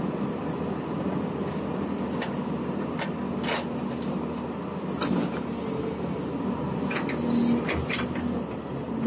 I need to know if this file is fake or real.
real